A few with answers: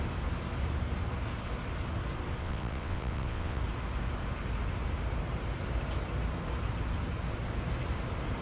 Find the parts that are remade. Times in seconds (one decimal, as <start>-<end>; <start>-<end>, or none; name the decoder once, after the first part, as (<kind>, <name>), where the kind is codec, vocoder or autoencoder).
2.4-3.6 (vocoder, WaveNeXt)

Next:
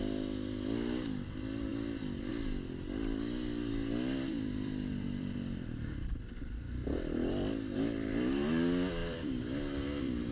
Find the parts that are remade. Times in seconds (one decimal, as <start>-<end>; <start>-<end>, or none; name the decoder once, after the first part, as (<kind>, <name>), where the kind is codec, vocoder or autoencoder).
4.3-5.9 (vocoder, BigVGAN v2); 9.0-10.3

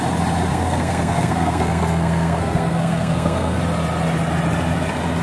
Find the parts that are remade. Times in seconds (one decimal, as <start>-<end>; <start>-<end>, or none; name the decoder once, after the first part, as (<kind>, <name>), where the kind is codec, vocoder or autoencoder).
0.5-3.6 (codec, SNAC)

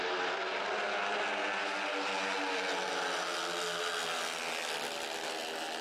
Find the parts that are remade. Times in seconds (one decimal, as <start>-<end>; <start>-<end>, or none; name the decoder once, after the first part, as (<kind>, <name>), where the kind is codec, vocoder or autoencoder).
none

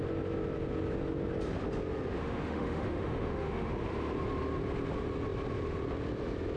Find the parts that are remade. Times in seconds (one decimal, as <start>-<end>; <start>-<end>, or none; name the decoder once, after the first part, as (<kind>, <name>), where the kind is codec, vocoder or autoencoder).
2.2-3.7 (autoencoder, DAC-VAE)